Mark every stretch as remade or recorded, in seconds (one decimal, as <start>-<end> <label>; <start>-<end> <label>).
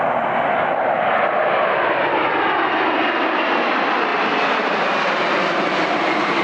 0.0-6.4 recorded